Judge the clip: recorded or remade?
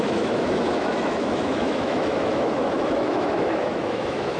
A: remade